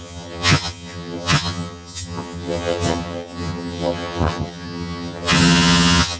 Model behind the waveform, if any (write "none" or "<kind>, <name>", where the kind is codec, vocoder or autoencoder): vocoder, HiFi-GAN